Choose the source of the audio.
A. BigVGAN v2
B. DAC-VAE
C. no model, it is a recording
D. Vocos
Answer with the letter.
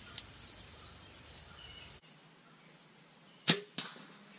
C